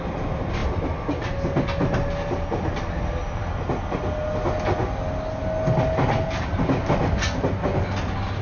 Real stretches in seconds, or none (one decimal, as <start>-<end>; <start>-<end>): 0.0-8.4